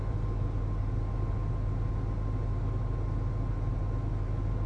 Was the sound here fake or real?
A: real